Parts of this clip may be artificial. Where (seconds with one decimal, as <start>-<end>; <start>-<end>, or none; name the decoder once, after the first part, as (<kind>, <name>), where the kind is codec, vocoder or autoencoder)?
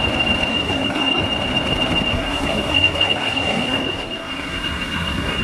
0.5-1.2 (codec, SNAC); 2.1-5.4